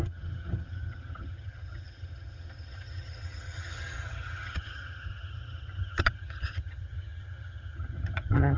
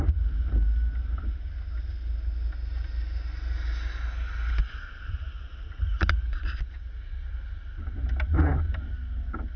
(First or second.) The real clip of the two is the second